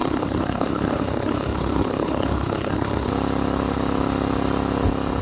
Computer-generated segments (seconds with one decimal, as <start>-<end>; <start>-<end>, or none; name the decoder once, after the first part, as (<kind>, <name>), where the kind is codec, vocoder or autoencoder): 0.0-3.1 (codec, SNAC)